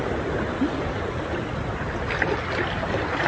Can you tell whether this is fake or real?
real